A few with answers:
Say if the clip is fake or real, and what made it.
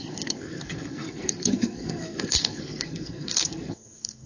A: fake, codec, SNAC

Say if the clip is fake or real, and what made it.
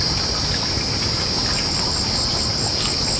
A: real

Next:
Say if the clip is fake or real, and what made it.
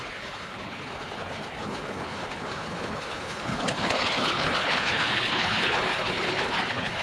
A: fake, codec, HILCodec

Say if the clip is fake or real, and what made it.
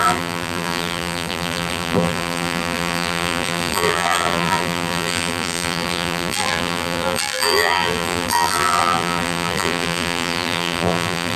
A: fake, vocoder, BigVGAN v2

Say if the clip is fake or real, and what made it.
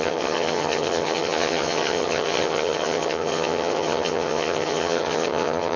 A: fake, vocoder, HiFi-GAN